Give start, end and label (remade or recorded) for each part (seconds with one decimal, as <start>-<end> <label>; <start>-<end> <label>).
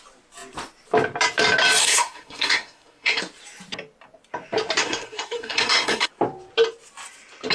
0.0-1.8 recorded; 1.8-3.2 remade; 3.2-4.8 recorded; 4.8-6.1 remade; 6.1-7.5 recorded